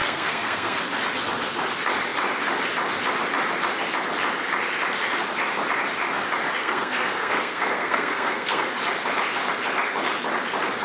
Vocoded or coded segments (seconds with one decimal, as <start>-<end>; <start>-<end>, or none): 0.0-0.8; 6.6-8.7

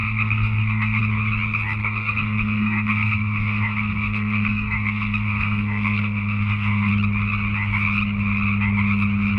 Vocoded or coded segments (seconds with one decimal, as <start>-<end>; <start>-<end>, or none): 0.0-1.0; 1.8-6.9

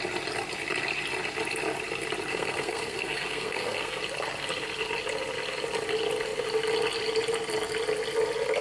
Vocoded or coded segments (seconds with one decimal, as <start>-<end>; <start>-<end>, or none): 2.3-4.0

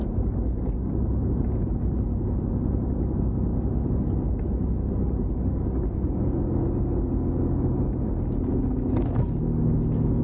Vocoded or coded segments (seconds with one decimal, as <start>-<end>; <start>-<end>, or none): none

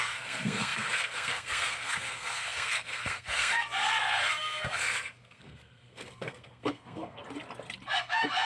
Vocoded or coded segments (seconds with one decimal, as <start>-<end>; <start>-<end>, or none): 0.0-7.2; 8.0-8.5

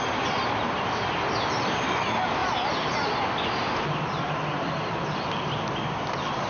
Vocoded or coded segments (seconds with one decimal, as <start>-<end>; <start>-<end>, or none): none

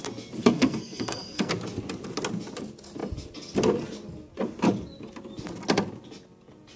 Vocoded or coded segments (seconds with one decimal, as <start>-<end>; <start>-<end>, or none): 0.4-1.5